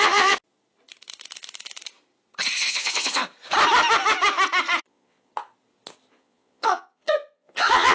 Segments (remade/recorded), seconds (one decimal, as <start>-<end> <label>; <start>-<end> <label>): 0.0-0.4 remade; 0.4-2.7 recorded; 2.7-3.2 remade; 3.2-4.8 recorded; 4.8-5.3 remade; 5.3-6.1 recorded; 6.1-7.9 remade